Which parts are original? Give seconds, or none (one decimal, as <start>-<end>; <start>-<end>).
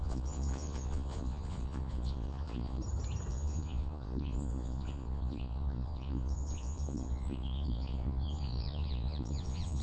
2.8-3.3